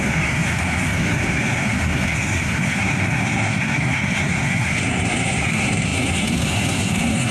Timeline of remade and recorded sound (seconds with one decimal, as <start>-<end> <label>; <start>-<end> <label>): 0.0-7.3 remade